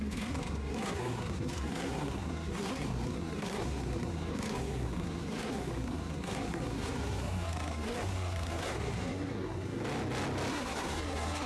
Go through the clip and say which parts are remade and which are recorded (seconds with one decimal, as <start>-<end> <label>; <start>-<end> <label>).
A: 0.0-9.8 remade; 9.8-10.5 recorded; 10.5-11.5 remade